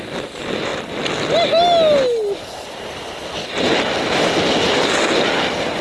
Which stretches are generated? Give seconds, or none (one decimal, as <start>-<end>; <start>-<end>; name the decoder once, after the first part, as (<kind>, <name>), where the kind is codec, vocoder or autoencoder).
none